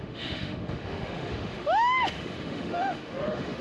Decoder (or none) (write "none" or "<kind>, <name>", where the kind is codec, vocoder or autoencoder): autoencoder, DAC-VAE